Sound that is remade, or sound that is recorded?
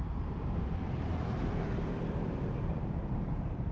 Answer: remade